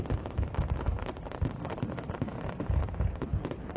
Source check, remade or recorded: recorded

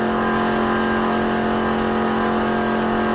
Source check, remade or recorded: recorded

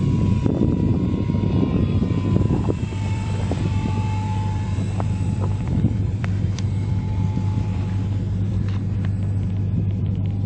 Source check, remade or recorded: remade